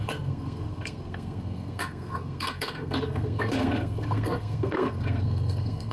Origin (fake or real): fake